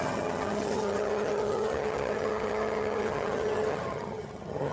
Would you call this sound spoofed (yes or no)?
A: yes